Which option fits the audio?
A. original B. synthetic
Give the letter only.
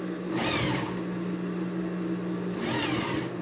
A